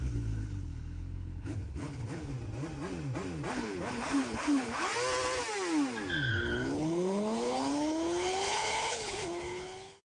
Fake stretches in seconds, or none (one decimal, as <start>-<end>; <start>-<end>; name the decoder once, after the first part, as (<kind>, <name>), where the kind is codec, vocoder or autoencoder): 0.0-2.3 (codec, HILCodec); 3.5-4.9; 6.3-10.0

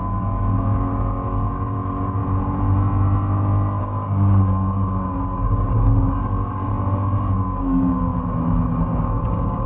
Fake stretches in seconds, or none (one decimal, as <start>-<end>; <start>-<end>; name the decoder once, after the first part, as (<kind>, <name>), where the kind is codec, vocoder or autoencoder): 0.0-2.2 (codec, DAC); 3.8-6.7; 7.3-8.1; 9.0-9.7

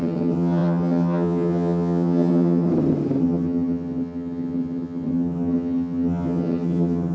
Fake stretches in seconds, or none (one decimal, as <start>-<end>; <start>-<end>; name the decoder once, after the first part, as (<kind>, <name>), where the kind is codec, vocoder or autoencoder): 0.0-2.7 (vocoder, HiFi-GAN); 3.2-7.1

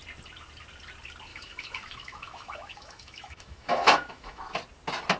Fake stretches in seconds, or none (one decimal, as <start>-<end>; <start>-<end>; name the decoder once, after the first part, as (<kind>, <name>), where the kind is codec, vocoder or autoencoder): 1.3-4.4 (autoencoder, DAC-VAE)

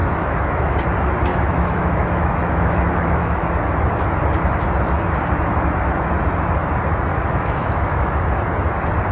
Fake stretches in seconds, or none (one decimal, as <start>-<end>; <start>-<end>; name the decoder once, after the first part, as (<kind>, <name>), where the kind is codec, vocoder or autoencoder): 0.0-0.8 (autoencoder, DAC-VAE); 1.3-3.5; 7.1-8.2